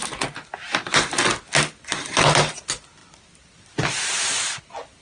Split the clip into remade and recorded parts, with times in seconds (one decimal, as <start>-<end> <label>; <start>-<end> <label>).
0.0-3.0 recorded; 3.0-4.6 remade; 4.6-5.0 recorded